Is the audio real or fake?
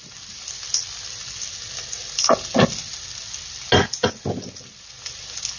real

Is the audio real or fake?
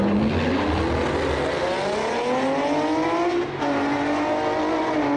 real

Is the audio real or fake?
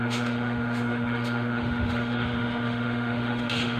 fake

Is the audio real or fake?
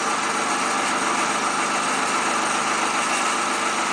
real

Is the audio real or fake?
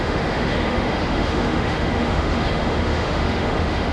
fake